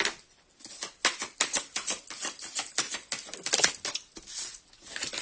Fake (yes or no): no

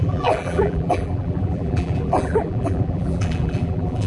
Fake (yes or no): yes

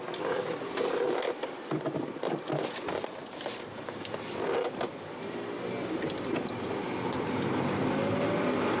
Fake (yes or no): no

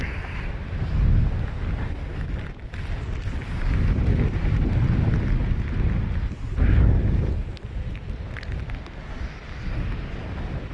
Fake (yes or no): no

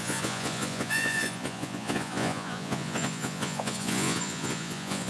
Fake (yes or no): yes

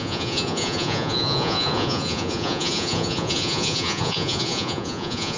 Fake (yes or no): yes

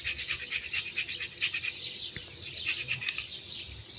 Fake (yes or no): no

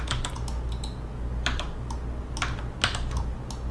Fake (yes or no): no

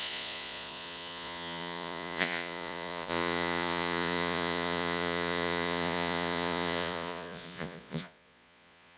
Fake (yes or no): yes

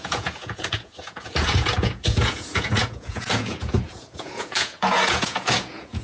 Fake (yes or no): yes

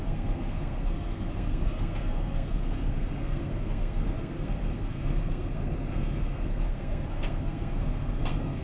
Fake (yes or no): yes